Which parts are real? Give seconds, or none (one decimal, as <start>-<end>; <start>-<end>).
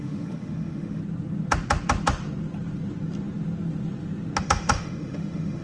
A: 1.0-4.4